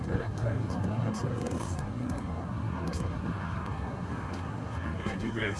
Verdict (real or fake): fake